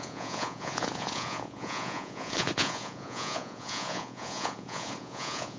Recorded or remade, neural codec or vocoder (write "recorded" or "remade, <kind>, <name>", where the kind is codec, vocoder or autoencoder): remade, vocoder, Vocos